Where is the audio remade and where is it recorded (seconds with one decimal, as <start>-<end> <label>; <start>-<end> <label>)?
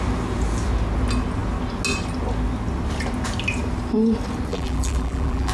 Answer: 0.0-4.5 recorded; 4.5-5.5 remade